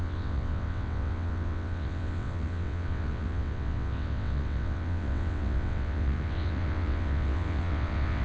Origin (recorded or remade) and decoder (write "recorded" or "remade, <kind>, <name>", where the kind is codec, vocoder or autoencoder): remade, vocoder, WaveNeXt